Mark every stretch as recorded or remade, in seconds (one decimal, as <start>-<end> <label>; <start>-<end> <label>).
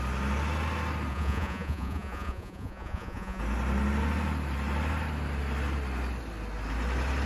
0.0-1.1 recorded; 1.1-3.4 remade; 3.4-7.3 recorded